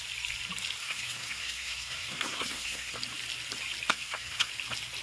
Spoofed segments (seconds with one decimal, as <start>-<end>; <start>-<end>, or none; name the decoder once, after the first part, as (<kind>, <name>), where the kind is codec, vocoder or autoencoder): 0.8-2.9 (codec, SNAC); 3.9-4.5